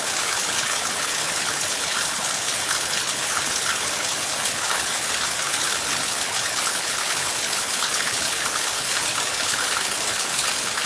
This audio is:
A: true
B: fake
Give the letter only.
B